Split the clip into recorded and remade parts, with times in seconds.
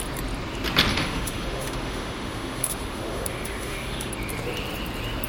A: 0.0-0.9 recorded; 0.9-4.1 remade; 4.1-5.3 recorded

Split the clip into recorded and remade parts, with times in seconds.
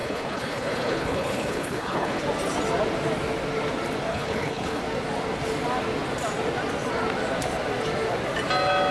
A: 0.0-2.2 remade; 2.2-4.1 recorded; 4.1-4.8 remade; 4.8-8.9 recorded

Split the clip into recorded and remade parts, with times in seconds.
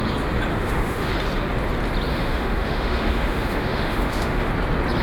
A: 0.0-0.5 recorded; 0.5-1.1 remade; 1.1-2.1 recorded; 2.1-4.5 remade; 4.5-5.0 recorded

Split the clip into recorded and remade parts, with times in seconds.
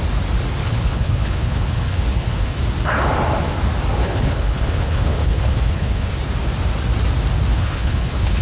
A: 0.0-0.6 recorded; 0.6-2.6 remade; 2.6-4.0 recorded; 4.0-6.1 remade; 6.1-7.5 recorded; 7.5-8.4 remade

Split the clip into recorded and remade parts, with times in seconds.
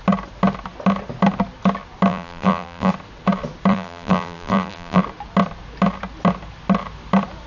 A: 0.0-2.1 recorded; 2.1-2.9 remade; 2.9-3.7 recorded; 3.7-5.0 remade; 5.0-7.5 recorded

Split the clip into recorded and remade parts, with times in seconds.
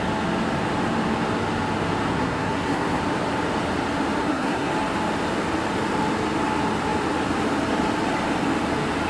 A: 0.0-2.1 recorded; 2.1-3.0 remade; 3.0-4.2 recorded; 4.2-4.7 remade; 4.7-9.1 recorded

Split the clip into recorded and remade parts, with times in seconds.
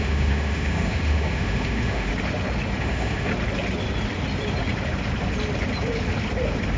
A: 0.0-2.1 remade; 2.1-2.8 recorded; 2.8-3.3 remade; 3.3-6.8 recorded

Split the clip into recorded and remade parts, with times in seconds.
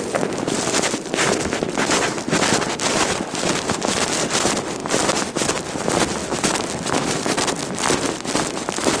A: 0.0-9.0 recorded